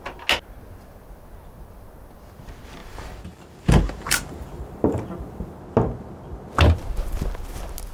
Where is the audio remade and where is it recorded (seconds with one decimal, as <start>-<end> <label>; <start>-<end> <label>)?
0.0-2.8 recorded; 2.8-5.0 remade; 5.0-7.9 recorded